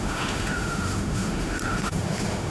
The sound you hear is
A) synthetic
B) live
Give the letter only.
A